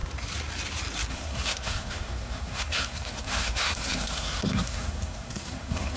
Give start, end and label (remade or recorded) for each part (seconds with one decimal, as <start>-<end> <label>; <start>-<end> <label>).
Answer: 0.0-1.1 recorded; 1.1-6.0 remade